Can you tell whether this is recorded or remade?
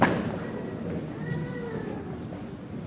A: recorded